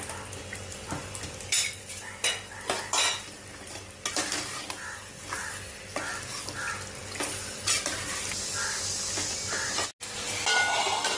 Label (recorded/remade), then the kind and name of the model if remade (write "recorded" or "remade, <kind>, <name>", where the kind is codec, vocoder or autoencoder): recorded